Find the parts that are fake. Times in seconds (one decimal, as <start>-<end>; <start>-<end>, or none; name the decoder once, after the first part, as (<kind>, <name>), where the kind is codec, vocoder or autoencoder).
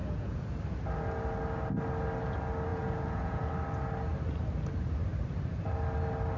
0.0-0.6 (vocoder, Vocos); 2.7-3.5